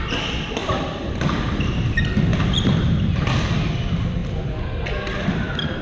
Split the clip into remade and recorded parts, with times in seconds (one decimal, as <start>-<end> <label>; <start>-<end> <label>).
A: 0.0-0.6 recorded; 0.6-1.2 remade; 1.2-2.3 recorded; 2.3-2.9 remade; 2.9-4.2 recorded; 4.2-5.8 remade